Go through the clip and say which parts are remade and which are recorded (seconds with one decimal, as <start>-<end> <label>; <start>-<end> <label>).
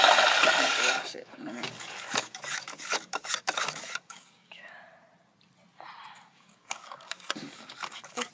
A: 0.0-0.4 recorded; 0.4-4.7 remade; 4.7-6.2 recorded; 6.2-8.3 remade